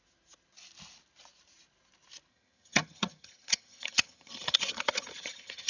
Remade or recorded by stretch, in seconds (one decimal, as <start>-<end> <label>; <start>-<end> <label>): 0.0-2.3 recorded; 2.3-5.7 remade